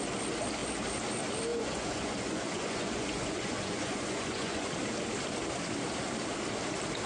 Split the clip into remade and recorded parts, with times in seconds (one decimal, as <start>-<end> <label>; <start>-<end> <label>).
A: 0.0-1.5 recorded; 1.5-4.7 remade; 4.7-7.1 recorded